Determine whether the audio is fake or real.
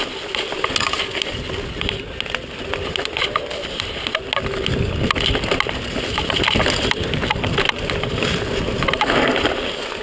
real